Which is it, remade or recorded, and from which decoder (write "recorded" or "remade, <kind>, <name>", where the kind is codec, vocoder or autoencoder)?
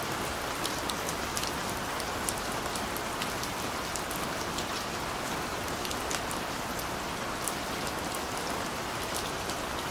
recorded